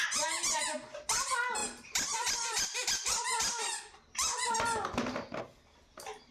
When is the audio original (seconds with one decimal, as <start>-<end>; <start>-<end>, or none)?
0.0-1.6; 5.4-6.3